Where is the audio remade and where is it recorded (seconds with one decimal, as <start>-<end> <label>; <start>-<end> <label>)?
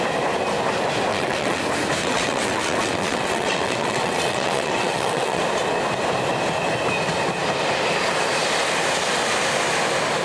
0.0-1.1 recorded; 1.1-1.6 remade; 1.6-2.0 recorded; 2.0-5.4 remade; 5.4-10.2 recorded